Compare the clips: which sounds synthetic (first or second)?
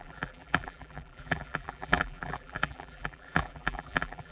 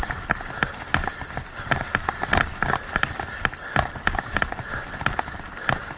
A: first